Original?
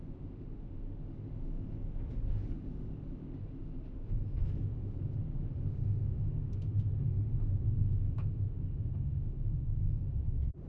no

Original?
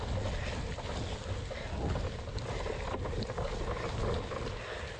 yes